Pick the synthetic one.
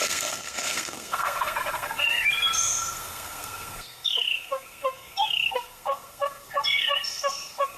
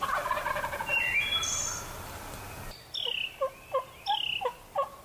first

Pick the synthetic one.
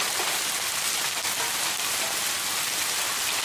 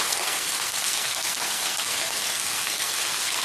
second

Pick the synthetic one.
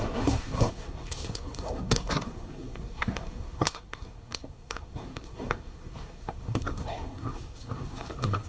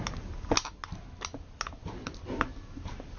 first